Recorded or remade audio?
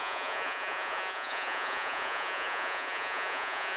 remade